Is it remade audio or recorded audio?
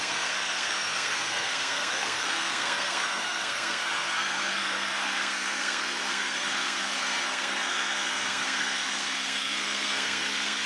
remade